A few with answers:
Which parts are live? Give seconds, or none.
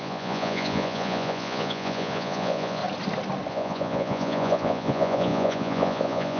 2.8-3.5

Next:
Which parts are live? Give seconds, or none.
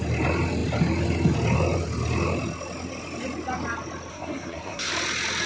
0.0-4.1; 4.9-5.5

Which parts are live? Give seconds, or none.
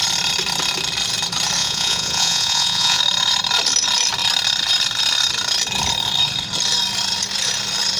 0.0-1.6; 3.0-8.0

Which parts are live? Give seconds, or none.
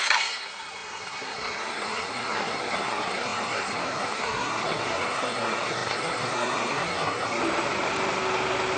7.4-8.8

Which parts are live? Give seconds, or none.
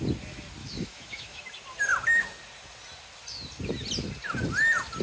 0.0-0.6; 1.4-5.0